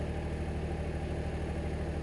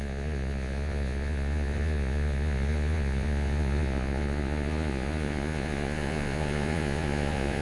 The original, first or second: first